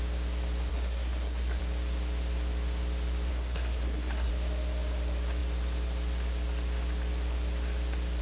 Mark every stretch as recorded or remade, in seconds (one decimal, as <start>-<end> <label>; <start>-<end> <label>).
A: 0.0-0.7 recorded; 0.7-1.6 remade; 1.6-3.3 recorded; 3.3-4.3 remade; 4.3-8.2 recorded